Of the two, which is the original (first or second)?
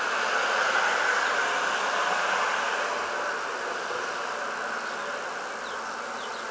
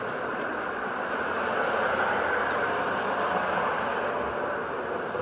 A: first